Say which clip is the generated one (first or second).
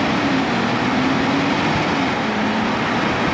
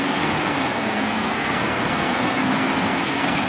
second